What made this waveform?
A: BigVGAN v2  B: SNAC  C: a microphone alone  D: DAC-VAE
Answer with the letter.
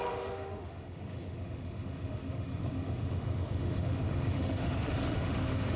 D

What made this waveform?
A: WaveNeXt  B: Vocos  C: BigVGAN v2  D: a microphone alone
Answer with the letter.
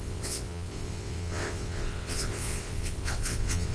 A